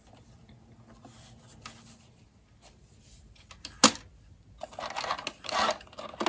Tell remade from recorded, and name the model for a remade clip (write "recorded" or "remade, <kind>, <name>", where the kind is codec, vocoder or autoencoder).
recorded